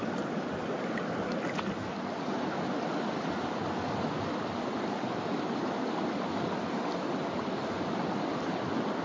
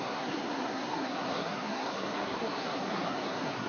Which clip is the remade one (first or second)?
second